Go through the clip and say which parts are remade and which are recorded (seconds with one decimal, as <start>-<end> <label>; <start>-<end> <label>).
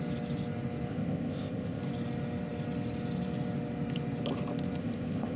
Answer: 0.0-0.9 recorded; 0.9-1.8 remade; 1.8-4.8 recorded; 4.8-5.4 remade